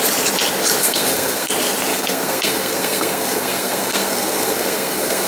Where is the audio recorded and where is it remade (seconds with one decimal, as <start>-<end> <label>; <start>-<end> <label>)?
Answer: 0.0-0.8 recorded; 0.8-1.5 remade; 1.5-1.9 recorded; 1.9-5.3 remade